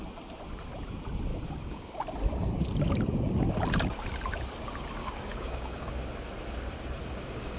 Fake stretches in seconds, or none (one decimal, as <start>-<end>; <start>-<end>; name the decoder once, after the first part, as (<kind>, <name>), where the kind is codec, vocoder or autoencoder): 1.3-2.0 (codec, DAC); 5.0-5.9; 7.0-7.6

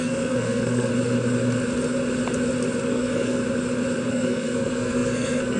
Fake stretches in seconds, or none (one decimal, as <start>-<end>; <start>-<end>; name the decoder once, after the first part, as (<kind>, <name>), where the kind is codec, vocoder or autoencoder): 0.0-0.9 (codec, SNAC); 2.9-3.4; 4.1-5.6

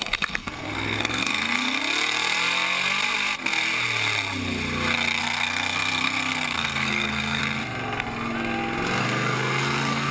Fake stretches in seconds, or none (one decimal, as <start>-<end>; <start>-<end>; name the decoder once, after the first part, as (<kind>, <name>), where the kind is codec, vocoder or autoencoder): 0.0-1.8 (codec, SNAC); 5.2-7.4; 9.0-10.1

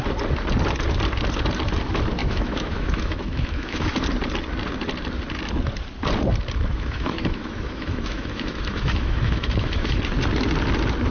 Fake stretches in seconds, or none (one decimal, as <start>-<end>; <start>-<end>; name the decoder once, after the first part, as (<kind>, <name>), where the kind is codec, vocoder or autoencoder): 2.2-4.0 (autoencoder, DAC-VAE); 6.7-10.0

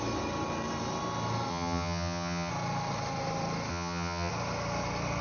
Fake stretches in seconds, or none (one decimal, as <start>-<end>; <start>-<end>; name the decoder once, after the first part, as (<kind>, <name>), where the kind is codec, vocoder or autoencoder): 1.5-2.5 (vocoder, HiFi-GAN); 3.7-4.3

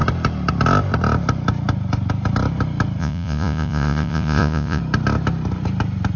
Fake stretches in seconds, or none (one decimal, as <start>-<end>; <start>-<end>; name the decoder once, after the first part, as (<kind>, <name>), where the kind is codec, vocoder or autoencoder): 3.0-4.8 (vocoder, Vocos)